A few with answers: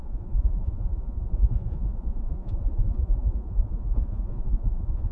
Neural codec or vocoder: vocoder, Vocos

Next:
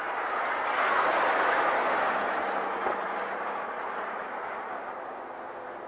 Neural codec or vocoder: none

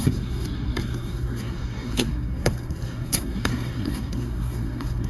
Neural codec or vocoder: codec, SNAC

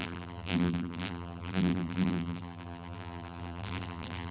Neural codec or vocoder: vocoder, BigVGAN v2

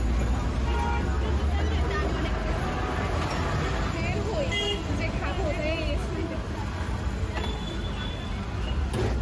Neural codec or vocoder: none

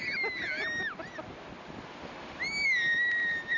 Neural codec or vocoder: none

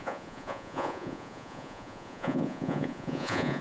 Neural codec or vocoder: vocoder, Vocos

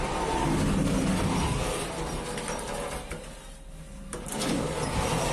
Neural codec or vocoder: none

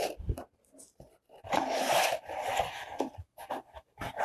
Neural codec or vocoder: vocoder, BigVGAN v2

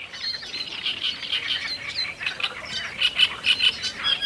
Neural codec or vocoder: none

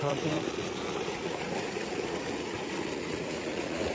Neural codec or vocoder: vocoder, Vocos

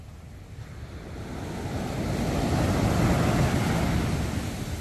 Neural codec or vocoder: none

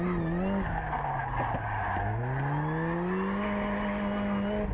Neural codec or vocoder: none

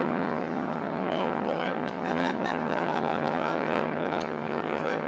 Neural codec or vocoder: vocoder, HiFi-GAN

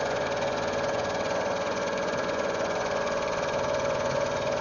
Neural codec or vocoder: vocoder, Vocos